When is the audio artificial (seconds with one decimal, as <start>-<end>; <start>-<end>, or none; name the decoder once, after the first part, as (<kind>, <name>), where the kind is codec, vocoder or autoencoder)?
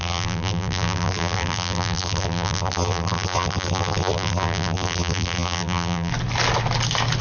0.0-6.1 (vocoder, BigVGAN v2)